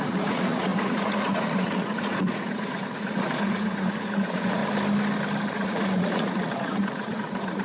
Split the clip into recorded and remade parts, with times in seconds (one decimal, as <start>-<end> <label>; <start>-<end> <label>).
0.0-4.6 remade; 4.6-5.5 recorded; 5.5-7.6 remade